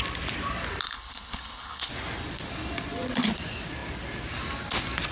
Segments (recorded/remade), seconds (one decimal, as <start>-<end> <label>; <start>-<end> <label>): 0.0-0.8 recorded; 0.8-1.9 remade; 1.9-5.1 recorded